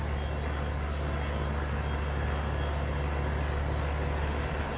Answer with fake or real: real